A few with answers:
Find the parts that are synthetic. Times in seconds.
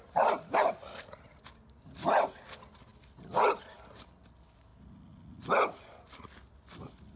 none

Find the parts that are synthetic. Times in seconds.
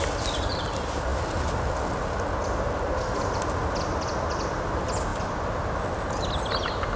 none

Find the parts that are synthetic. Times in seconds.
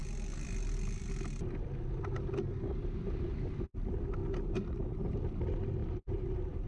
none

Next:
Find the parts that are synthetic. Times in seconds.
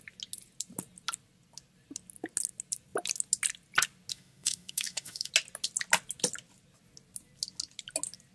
4.1-5.3 (autoencoder, DAC-VAE)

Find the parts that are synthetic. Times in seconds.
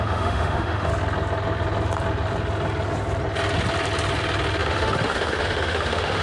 0.0-0.9 (autoencoder, DAC-VAE); 4.6-6.2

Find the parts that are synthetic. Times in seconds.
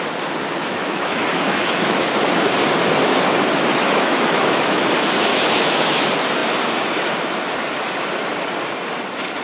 0.6-2.1 (autoencoder, DAC-VAE); 3.8-4.8; 5.3-6.0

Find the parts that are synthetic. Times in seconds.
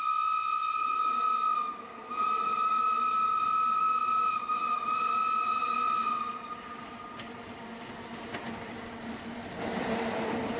none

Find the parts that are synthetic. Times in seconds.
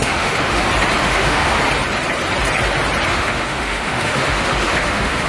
0.0-0.6 (autoencoder, DAC-VAE); 1.0-1.6; 3.1-5.3